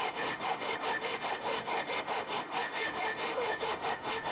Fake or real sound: fake